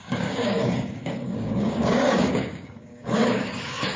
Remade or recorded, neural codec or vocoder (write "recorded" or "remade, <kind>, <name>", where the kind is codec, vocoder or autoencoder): remade, codec, DAC